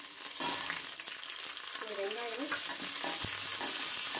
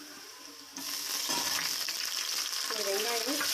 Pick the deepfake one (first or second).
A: first